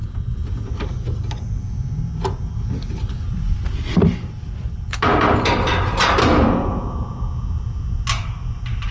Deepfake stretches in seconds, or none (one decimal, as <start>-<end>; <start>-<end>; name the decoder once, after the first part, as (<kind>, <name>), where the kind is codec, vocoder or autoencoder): none